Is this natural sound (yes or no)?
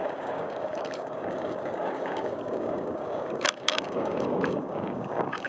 no